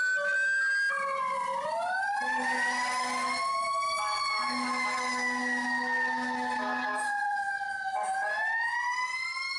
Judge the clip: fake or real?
real